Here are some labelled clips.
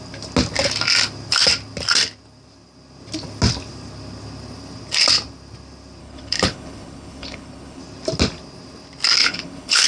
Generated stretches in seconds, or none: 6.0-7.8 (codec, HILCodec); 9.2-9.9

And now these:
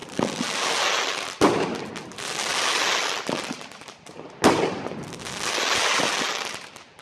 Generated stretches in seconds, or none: none

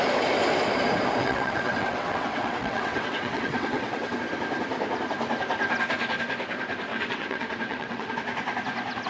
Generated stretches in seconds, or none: 1.2-4.1 (vocoder, WaveNeXt); 6.9-8.1